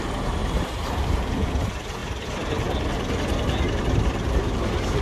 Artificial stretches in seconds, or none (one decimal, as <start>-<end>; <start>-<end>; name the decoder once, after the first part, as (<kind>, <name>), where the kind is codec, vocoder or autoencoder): 0.4-1.5 (vocoder, BigVGAN v2)